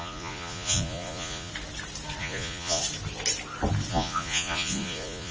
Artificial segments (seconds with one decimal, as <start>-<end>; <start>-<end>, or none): 0.0-1.5; 2.2-2.8; 3.9-5.3